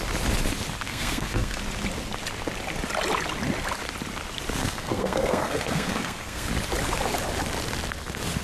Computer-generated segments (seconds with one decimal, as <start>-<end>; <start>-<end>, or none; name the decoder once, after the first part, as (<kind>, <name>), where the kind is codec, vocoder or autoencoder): 0.9-1.6 (codec, SNAC); 4.6-6.5